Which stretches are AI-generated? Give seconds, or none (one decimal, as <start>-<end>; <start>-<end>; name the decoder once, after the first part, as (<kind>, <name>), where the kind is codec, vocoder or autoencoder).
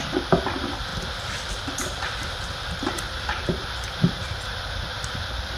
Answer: 0.0-5.6 (vocoder, BigVGAN v2)